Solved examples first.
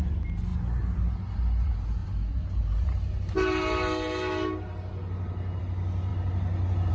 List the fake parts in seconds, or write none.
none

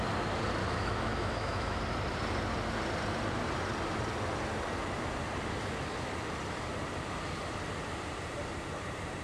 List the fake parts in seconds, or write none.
0.6-1.8

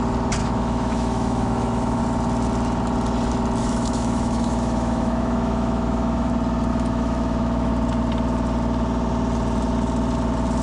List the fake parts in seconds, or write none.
0.4-2.0; 3.6-6.3; 6.7-7.7